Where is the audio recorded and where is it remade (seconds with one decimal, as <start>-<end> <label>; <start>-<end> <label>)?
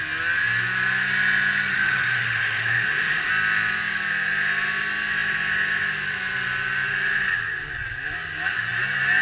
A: 0.0-1.7 recorded; 1.7-3.3 remade; 3.3-9.2 recorded